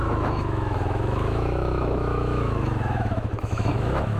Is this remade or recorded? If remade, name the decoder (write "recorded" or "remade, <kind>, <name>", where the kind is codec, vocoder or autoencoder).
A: remade, autoencoder, DAC-VAE